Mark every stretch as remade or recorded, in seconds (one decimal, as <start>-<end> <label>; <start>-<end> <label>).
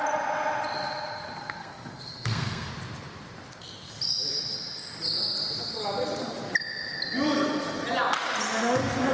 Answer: 0.0-1.6 recorded; 1.6-2.7 remade; 2.7-9.1 recorded